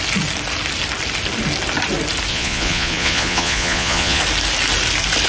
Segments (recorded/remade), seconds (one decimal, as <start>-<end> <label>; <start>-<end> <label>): 0.0-2.3 recorded; 2.3-4.2 remade; 4.2-5.3 recorded